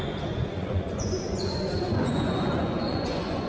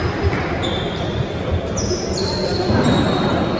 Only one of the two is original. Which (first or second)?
second